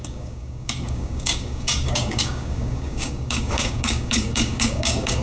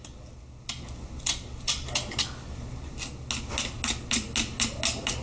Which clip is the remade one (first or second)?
first